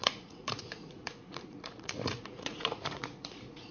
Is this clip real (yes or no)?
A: no